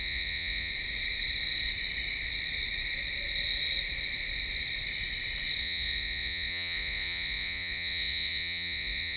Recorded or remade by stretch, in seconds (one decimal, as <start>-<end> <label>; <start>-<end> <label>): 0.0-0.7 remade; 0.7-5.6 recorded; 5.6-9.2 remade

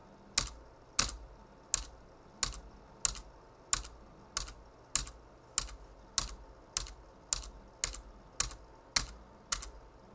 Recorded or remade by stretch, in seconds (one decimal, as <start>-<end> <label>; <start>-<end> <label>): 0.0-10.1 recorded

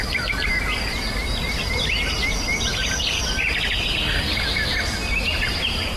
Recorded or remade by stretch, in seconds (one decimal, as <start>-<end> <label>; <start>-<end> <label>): 0.0-6.0 remade